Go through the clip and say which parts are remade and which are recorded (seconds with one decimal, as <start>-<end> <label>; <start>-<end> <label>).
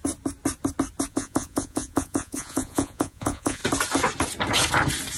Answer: 0.0-1.1 recorded; 1.1-3.6 remade; 3.6-5.2 recorded